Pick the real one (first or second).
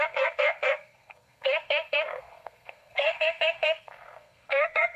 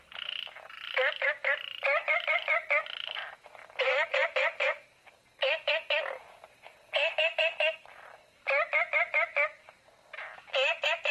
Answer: second